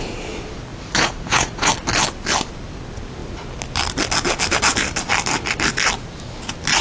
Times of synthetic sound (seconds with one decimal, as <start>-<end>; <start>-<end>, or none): 0.7-1.7